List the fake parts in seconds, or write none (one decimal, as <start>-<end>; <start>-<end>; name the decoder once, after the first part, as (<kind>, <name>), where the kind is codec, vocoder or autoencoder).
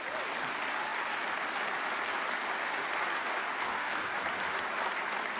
3.6-4.2 (codec, DAC)